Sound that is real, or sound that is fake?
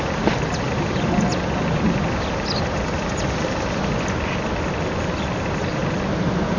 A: real